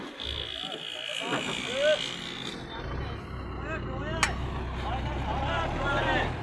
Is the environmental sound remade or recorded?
recorded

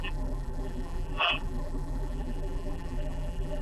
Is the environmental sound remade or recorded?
remade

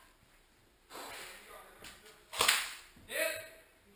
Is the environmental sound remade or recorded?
recorded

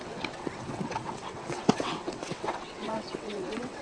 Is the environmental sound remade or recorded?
remade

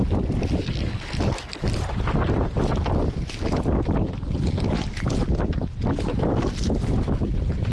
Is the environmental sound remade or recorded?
recorded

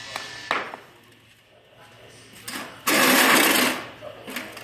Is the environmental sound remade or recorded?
recorded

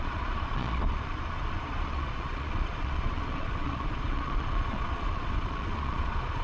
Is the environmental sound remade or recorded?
remade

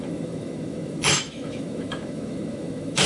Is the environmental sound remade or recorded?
remade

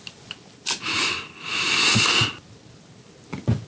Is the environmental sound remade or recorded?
recorded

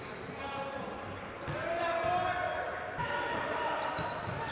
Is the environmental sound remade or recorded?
recorded